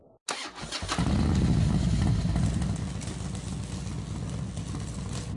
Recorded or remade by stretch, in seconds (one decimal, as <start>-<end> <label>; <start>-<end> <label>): 0.0-5.4 recorded